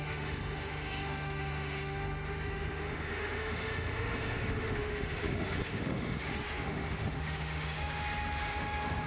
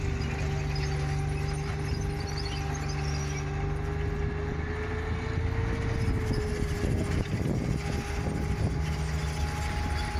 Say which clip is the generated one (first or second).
first